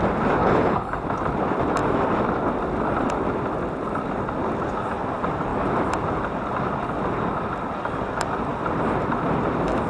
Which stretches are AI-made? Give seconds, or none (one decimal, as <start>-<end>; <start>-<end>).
0.4-1.0